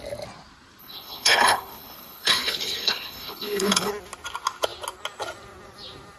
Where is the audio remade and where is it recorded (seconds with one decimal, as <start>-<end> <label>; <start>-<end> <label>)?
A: 0.0-0.8 recorded; 0.8-3.9 remade; 3.9-6.2 recorded